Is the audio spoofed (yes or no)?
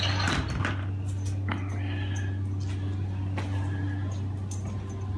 no